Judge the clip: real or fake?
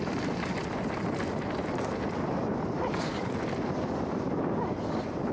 real